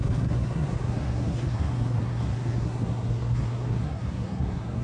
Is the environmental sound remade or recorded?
remade